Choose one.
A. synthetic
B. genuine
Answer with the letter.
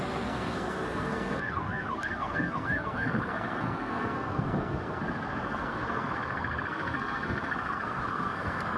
A